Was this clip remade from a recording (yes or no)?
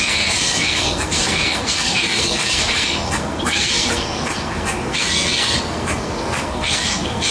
yes